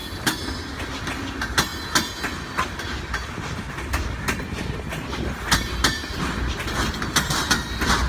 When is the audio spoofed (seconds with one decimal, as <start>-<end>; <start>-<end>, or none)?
none